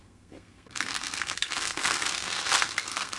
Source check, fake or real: fake